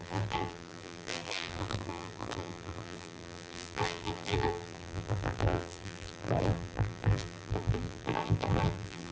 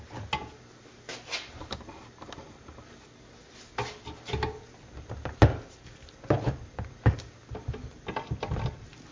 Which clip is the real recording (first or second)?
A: second